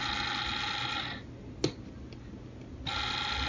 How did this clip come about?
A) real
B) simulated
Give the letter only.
A